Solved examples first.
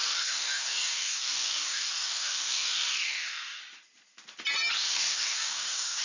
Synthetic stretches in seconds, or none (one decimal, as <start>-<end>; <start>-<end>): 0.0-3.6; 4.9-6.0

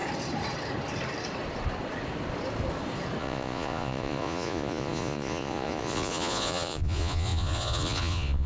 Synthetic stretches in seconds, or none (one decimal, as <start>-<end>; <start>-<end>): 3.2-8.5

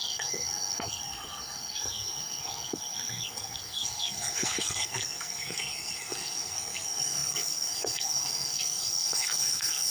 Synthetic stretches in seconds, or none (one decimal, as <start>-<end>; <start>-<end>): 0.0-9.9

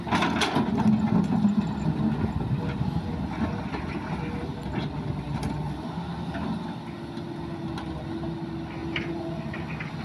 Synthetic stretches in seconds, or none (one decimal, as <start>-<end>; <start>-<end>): 8.8-9.4

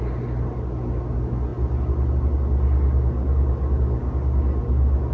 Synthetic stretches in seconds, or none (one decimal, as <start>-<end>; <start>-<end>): none

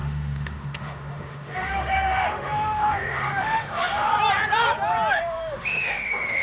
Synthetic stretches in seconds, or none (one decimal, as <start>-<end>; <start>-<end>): 0.0-4.1; 5.1-6.4

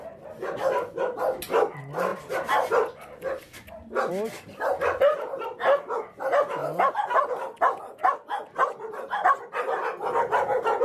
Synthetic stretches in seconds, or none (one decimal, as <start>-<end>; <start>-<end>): none